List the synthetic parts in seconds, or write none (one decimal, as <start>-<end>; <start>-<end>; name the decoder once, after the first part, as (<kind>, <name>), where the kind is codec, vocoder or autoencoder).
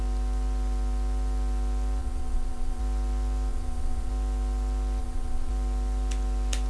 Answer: 2.0-2.8 (vocoder, Vocos); 3.5-4.1; 5.0-5.5